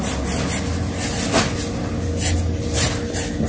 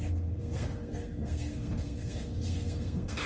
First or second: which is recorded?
first